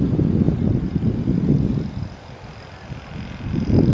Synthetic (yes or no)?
no